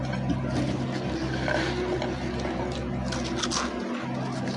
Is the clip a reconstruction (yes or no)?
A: no